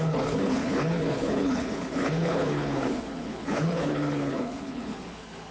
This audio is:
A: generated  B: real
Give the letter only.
A